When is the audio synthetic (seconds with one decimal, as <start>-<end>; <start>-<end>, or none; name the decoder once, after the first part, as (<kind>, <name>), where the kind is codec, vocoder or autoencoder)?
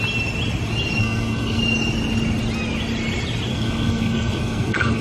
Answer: 1.0-1.6 (codec, SNAC); 3.5-5.0